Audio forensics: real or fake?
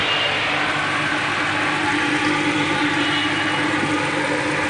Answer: real